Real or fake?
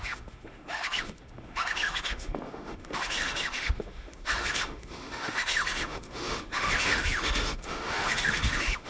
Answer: fake